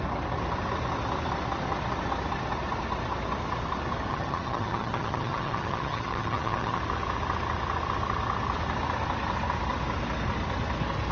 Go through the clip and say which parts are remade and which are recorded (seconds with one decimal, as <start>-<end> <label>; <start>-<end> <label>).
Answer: 0.0-4.1 recorded; 4.1-6.8 remade; 6.8-11.1 recorded